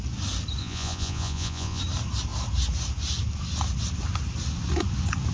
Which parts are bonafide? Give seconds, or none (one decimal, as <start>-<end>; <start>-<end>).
0.0-0.6; 1.8-5.3

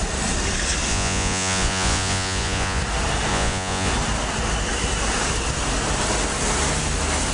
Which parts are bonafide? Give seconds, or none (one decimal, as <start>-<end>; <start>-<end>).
0.0-0.9; 2.8-3.3; 3.9-7.3

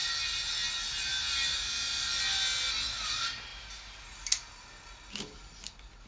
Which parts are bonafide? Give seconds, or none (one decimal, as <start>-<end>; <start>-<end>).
0.0-6.1

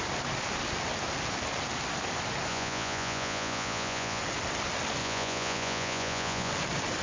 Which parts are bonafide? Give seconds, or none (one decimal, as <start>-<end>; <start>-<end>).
0.0-2.5; 4.2-5.0; 6.5-7.0